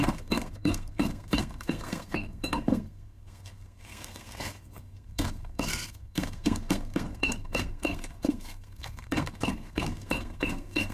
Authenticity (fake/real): fake